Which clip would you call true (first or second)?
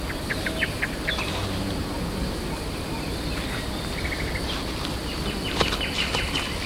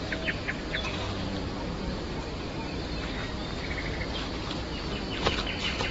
second